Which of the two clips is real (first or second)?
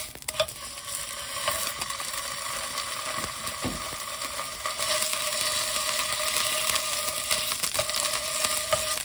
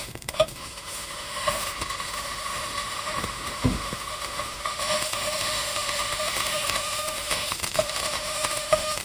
first